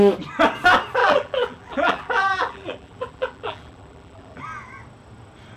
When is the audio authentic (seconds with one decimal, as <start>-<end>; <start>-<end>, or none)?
0.0-1.0; 4.4-5.6